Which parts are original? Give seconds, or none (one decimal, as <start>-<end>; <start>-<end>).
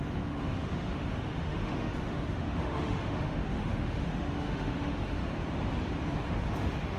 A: 5.2-6.3